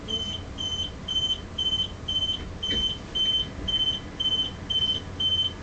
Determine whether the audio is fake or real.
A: real